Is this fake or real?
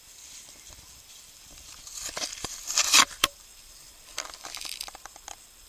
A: fake